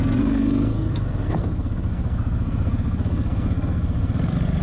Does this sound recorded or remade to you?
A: remade